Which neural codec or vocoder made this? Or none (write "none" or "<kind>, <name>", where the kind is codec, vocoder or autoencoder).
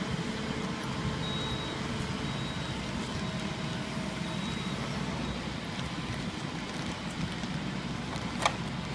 none